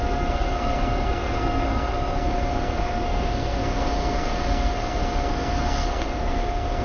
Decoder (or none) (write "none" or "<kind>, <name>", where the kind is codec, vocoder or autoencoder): codec, SNAC